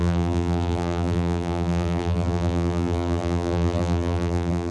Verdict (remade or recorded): remade